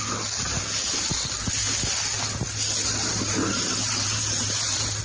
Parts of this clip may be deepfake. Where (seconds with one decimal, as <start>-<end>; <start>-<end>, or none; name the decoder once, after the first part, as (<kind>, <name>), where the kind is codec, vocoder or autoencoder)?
3.0-5.0 (vocoder, BigVGAN v2)